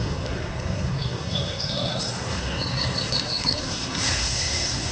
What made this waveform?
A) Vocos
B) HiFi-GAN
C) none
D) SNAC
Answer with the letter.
D